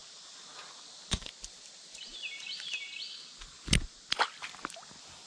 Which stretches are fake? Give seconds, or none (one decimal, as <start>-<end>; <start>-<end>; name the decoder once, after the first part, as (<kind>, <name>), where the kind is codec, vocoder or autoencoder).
none